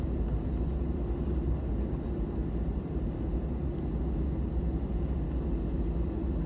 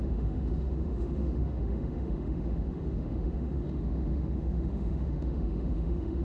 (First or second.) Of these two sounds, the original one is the first